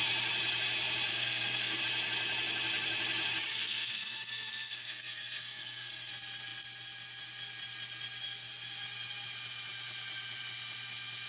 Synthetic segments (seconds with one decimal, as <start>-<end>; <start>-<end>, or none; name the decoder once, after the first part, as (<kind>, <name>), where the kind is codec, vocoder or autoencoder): 1.1-1.8 (codec, SNAC); 3.5-6.1